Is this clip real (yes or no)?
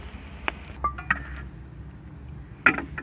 yes